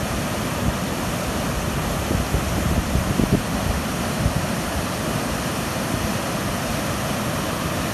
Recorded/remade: remade